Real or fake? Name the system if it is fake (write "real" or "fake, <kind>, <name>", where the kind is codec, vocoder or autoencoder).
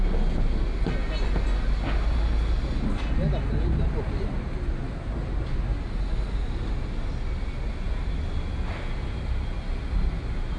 real